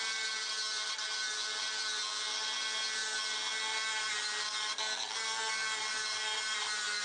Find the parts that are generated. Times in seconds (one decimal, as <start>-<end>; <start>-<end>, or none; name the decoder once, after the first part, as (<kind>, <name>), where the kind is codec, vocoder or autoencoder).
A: none